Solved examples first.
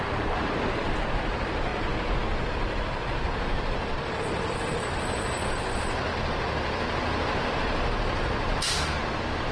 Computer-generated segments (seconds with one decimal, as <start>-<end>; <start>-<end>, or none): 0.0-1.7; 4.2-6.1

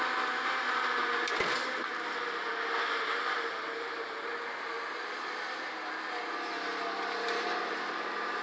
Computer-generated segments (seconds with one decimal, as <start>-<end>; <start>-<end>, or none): none

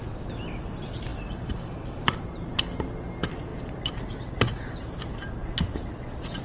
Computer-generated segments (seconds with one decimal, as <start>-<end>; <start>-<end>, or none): 1.1-2.6; 3.5-5.1